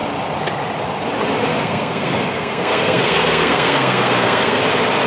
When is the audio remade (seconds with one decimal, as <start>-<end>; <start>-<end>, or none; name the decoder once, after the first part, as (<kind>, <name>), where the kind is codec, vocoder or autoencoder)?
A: 1.5-4.6 (codec, SNAC)